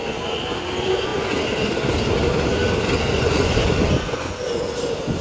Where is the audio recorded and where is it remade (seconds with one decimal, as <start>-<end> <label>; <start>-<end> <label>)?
0.0-3.1 recorded; 3.1-4.7 remade; 4.7-5.2 recorded